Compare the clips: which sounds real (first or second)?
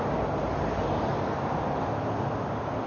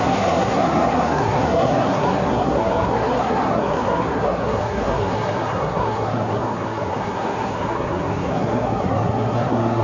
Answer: first